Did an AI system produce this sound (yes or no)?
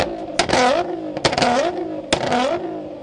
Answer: no